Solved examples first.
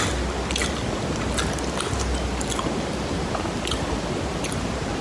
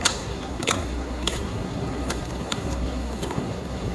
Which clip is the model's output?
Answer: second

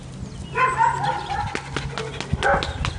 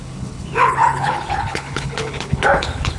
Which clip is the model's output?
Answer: second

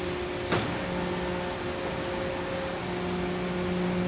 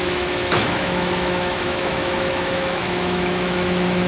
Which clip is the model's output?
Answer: second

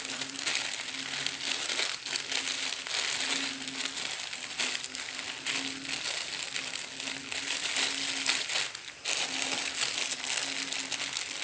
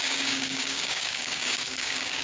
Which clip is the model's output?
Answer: second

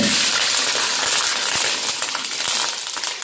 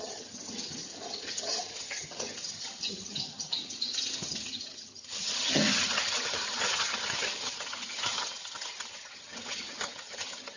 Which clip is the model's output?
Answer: second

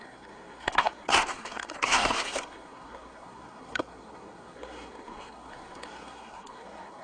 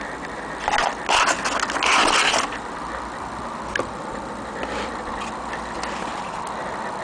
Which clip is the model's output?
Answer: first